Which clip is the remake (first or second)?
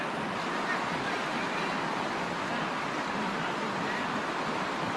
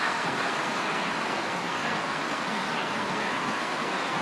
second